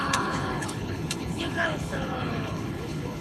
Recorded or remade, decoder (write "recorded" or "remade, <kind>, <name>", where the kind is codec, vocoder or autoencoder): remade, codec, HILCodec